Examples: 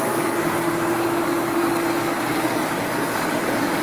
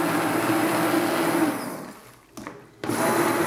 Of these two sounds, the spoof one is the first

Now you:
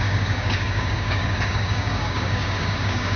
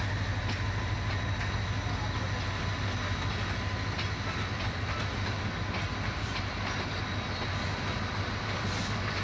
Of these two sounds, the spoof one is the first